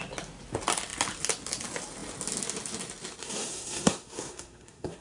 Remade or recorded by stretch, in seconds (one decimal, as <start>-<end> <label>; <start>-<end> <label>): 0.0-3.2 recorded; 3.2-5.0 remade